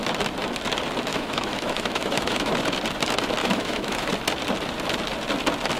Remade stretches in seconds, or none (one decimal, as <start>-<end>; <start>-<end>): 1.1-2.5; 3.4-4.1